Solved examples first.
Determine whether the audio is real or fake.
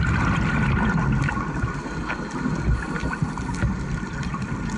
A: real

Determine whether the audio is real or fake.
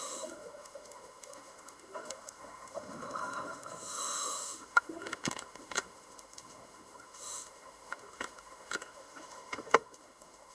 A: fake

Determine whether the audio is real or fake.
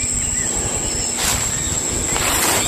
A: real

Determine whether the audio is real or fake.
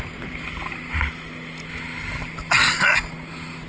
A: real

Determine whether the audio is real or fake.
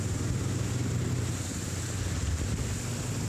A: real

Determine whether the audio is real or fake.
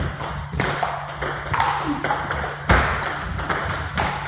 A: real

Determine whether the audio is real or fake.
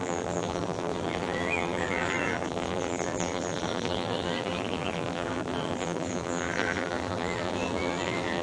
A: fake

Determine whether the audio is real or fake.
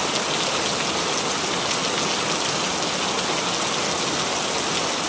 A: real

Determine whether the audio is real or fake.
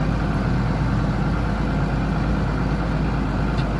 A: real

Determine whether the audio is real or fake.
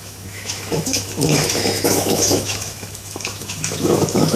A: fake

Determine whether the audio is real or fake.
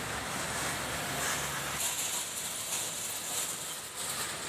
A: real